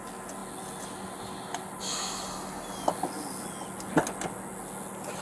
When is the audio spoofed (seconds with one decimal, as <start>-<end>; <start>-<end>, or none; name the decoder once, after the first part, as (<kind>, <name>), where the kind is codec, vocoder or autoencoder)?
none